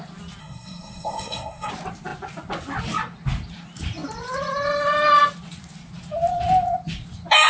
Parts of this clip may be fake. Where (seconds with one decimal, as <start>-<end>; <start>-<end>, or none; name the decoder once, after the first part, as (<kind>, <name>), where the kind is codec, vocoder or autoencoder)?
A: 0.4-1.7 (codec, SNAC)